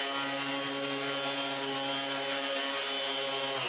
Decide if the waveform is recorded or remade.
recorded